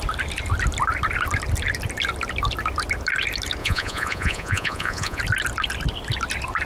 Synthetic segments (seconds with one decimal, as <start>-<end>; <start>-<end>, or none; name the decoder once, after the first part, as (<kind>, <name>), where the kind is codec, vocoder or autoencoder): 3.6-5.2 (vocoder, Vocos)